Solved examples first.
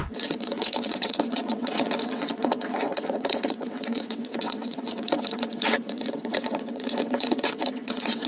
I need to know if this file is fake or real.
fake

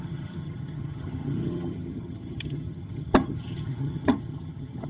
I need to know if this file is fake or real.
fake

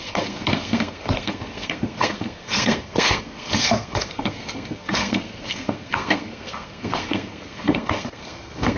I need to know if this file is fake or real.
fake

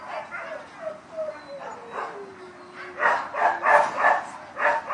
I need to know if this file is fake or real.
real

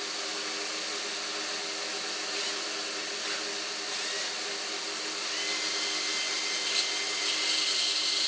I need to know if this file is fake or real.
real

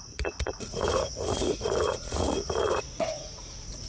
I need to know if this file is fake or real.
fake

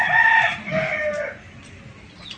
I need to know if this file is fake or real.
real